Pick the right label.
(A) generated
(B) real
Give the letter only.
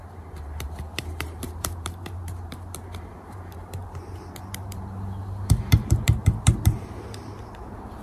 A